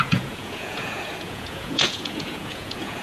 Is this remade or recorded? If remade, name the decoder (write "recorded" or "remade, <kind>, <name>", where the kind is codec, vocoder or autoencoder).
remade, vocoder, Vocos